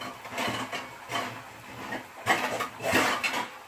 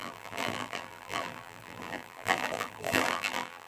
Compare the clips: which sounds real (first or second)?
first